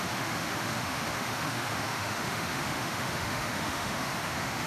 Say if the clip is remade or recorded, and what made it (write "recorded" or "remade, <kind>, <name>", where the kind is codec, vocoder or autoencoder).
remade, autoencoder, DAC-VAE